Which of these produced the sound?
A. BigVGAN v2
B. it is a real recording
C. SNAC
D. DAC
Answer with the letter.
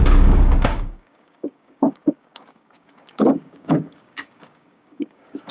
D